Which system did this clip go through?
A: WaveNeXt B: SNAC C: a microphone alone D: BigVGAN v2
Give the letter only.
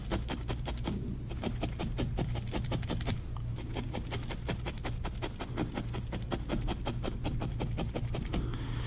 C